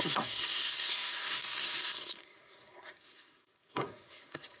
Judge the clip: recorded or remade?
remade